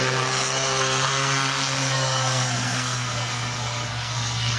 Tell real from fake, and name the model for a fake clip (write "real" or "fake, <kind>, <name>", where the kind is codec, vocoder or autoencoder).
fake, codec, SNAC